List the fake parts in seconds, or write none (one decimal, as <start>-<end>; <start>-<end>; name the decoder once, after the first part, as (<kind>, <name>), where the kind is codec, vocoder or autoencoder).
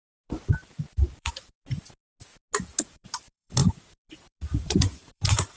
0.5-2.0 (vocoder, BigVGAN v2); 2.6-5.6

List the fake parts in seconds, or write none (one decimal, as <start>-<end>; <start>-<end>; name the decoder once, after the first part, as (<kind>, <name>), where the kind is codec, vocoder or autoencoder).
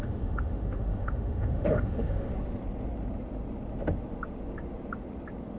0.0-2.3 (autoencoder, DAC-VAE)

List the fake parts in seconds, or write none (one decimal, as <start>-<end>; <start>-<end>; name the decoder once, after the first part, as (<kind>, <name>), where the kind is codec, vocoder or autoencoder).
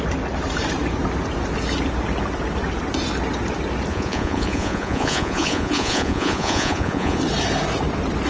3.9-7.2 (vocoder, Vocos)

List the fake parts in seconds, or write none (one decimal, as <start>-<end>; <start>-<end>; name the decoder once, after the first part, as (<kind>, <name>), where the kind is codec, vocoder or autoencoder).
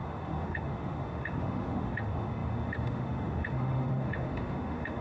0.0-5.0 (autoencoder, DAC-VAE)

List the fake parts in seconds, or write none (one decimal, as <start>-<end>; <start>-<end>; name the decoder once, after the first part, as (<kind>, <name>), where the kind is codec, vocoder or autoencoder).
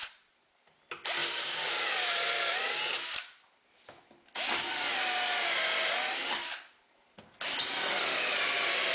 none